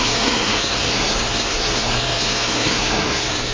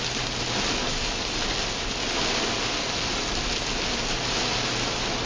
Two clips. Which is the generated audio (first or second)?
first